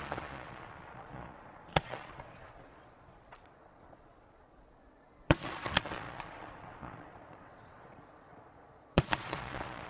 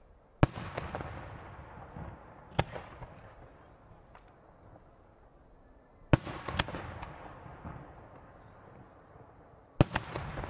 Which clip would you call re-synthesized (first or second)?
first